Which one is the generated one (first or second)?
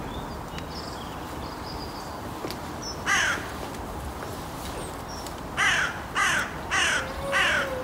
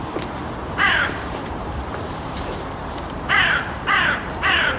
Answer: second